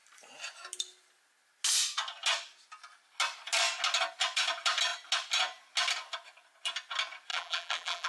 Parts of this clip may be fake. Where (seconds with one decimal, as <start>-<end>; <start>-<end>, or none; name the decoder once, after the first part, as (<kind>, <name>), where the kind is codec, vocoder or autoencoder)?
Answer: 7.3-8.1 (vocoder, BigVGAN v2)